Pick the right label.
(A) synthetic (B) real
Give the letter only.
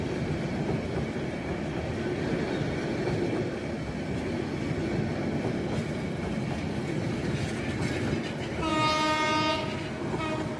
B